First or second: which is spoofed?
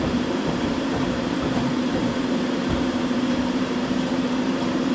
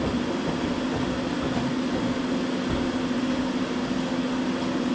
first